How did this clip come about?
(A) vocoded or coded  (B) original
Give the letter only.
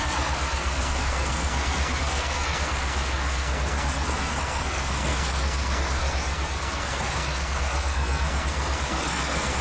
A